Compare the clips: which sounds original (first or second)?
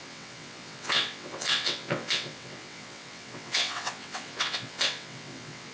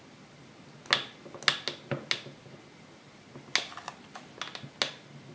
second